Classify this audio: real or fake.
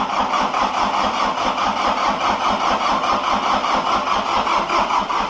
real